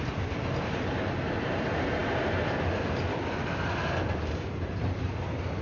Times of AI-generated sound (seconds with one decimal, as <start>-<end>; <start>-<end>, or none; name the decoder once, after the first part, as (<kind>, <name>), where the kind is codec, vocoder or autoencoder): none